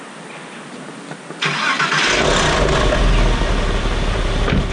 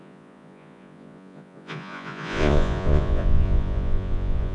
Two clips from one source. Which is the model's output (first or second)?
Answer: second